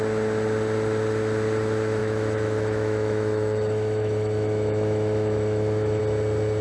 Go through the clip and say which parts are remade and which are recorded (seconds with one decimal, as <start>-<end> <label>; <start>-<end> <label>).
0.0-2.0 recorded; 2.0-6.0 remade; 6.0-6.6 recorded